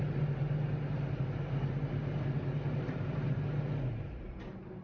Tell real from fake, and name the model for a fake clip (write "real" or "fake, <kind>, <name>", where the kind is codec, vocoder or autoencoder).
real